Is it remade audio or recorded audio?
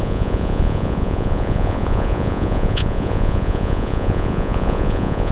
remade